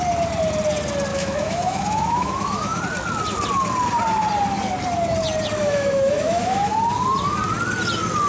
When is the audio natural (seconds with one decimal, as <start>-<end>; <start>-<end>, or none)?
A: 0.0-1.1; 2.8-5.6; 6.7-8.3